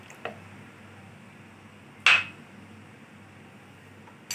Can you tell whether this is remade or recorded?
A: recorded